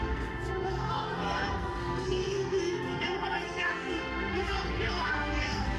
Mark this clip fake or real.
fake